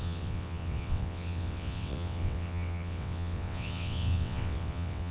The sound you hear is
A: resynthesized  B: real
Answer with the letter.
A